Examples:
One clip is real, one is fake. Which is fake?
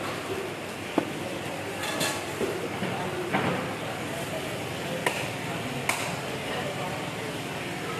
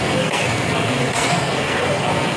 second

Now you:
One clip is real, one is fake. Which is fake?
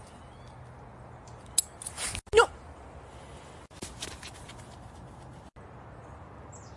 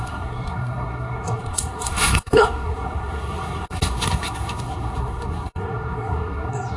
second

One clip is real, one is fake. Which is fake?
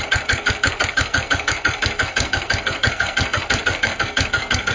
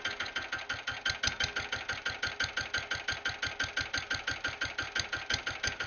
first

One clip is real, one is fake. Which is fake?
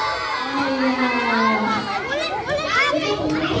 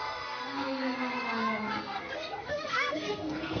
second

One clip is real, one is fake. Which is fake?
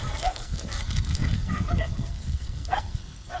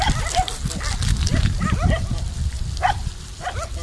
first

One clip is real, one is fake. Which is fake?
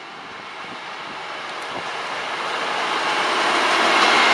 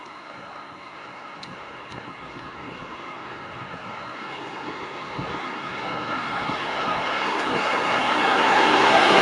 second